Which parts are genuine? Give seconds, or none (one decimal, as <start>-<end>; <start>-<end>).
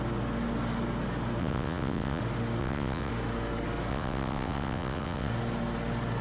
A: 0.0-1.4; 2.2-2.6; 3.1-3.9; 5.3-6.2